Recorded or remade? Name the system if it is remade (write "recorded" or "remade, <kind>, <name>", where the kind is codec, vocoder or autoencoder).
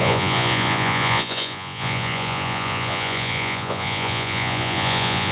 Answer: remade, vocoder, Vocos